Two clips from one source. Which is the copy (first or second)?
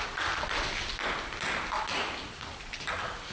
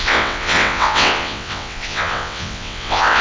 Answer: second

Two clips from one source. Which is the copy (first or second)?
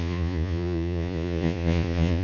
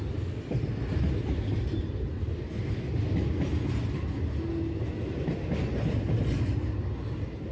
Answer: first